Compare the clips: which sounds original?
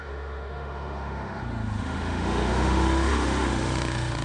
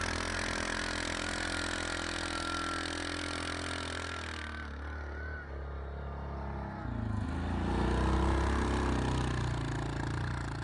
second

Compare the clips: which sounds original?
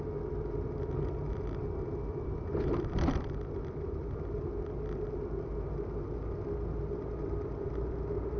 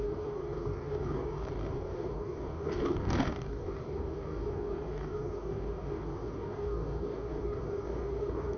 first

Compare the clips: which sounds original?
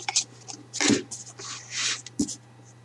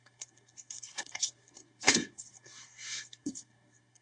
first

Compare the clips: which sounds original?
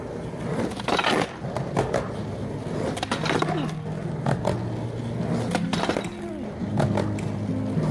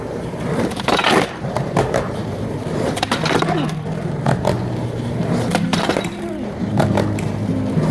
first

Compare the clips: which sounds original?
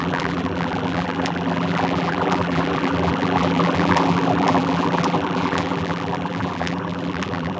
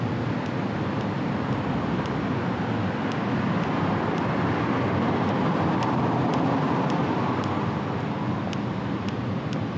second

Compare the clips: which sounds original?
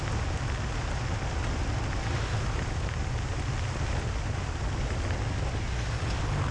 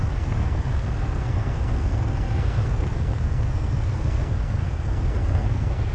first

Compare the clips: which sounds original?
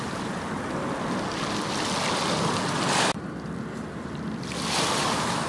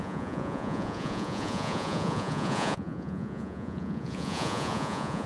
first